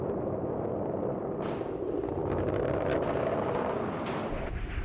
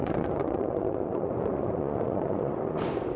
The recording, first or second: first